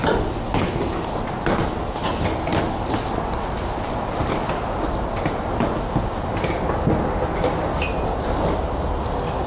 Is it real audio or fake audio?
real